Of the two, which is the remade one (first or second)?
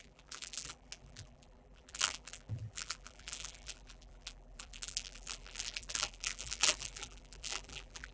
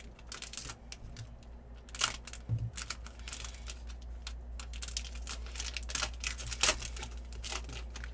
first